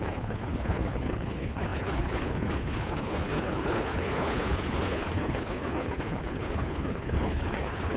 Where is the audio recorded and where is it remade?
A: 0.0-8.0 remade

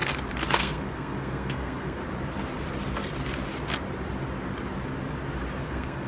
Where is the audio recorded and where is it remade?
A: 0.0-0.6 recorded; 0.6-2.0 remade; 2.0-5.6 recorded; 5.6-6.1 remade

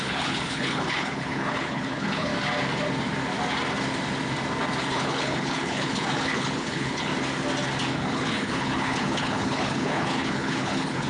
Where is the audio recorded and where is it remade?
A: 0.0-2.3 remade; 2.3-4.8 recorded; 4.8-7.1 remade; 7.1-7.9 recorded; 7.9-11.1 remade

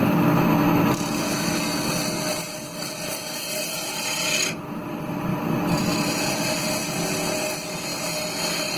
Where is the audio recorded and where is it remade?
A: 0.0-8.8 recorded